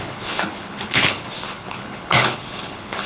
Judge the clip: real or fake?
fake